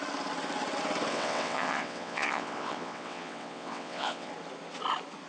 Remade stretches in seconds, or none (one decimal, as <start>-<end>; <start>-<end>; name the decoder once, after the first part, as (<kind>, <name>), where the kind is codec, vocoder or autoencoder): 1.1-4.3 (vocoder, WaveNeXt)